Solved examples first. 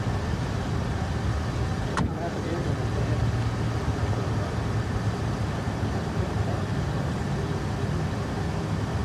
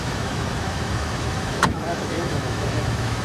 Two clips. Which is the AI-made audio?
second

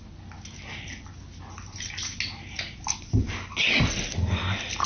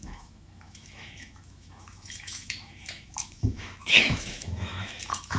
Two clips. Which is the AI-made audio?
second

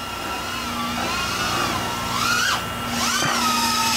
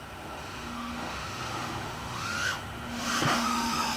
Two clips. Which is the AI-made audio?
second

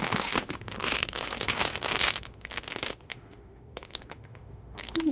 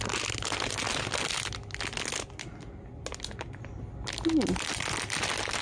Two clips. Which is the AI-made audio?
first